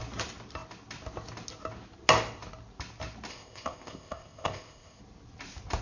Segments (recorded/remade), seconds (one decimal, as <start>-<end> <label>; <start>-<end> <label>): 0.0-3.3 recorded; 3.3-5.0 remade; 5.0-5.8 recorded